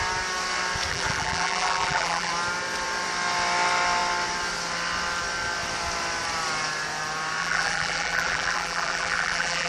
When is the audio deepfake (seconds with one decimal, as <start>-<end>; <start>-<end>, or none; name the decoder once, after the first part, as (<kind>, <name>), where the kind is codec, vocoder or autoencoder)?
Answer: 0.9-2.3 (vocoder, BigVGAN v2); 7.4-9.7